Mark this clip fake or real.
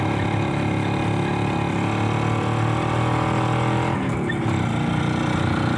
real